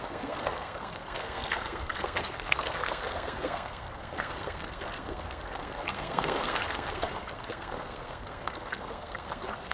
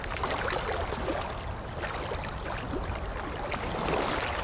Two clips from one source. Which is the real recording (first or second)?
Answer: second